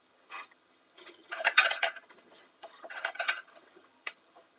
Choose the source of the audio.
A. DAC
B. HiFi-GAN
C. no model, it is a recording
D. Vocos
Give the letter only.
B